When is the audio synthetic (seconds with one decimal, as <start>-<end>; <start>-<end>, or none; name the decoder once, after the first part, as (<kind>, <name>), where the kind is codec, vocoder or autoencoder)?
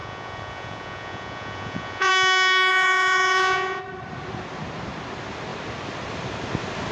0.0-2.1 (vocoder, Vocos); 2.7-3.8